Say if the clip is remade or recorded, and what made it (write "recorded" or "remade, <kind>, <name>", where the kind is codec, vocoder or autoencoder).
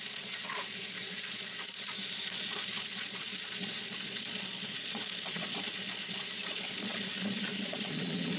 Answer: remade, vocoder, Vocos